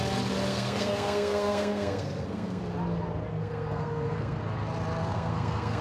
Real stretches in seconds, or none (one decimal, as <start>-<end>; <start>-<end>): 0.0-0.5; 2.6-3.3; 4.4-5.0